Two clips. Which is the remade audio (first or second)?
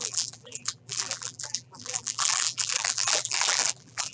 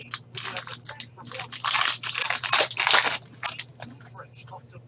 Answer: first